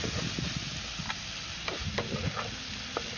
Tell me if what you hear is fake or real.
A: real